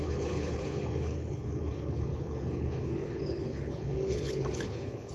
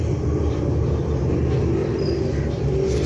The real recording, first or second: second